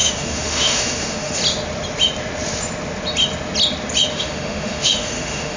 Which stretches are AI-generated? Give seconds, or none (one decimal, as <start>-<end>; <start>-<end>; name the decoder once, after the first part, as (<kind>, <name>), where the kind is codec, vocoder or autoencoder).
0.0-1.4 (autoencoder, DAC-VAE); 4.1-5.6